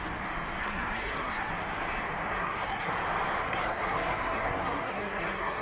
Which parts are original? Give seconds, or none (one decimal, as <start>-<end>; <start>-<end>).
0.0-0.6; 1.5-2.3; 2.9-3.4